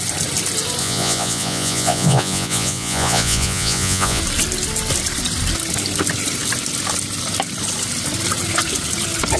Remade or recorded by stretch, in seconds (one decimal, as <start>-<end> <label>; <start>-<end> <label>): 0.0-0.8 recorded; 0.8-4.2 remade; 4.2-9.4 recorded